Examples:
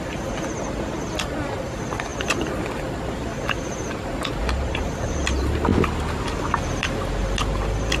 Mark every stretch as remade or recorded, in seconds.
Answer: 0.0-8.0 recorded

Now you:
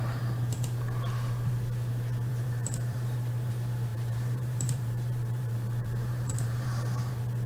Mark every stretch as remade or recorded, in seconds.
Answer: 0.0-2.3 recorded; 2.3-3.5 remade; 3.5-3.9 recorded; 3.9-7.1 remade; 7.1-7.5 recorded